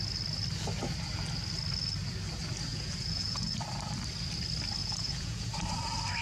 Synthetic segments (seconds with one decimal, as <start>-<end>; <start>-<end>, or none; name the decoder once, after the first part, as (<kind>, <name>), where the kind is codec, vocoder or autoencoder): 2.7-3.5 (vocoder, Vocos); 4.8-5.5